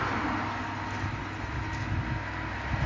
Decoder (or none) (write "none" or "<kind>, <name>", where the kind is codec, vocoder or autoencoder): none